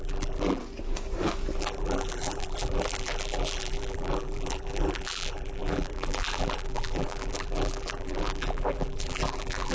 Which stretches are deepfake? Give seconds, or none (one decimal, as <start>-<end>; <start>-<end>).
0.0-0.6; 1.6-9.7

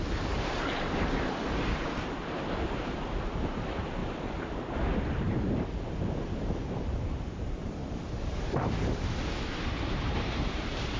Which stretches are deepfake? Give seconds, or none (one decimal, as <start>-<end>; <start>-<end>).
0.0-4.0; 5.4-7.8; 9.6-11.0

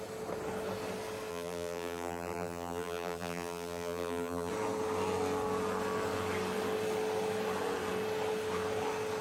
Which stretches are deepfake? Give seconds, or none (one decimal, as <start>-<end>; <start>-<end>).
1.3-4.5

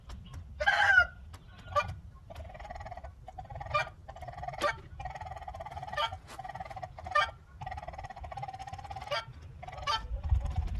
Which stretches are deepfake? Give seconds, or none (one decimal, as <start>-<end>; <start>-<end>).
4.0-4.7